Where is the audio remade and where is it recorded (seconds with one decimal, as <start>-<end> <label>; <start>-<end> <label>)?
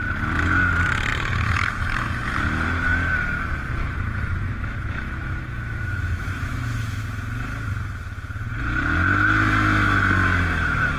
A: 0.0-3.8 recorded; 3.8-7.0 remade; 7.0-11.0 recorded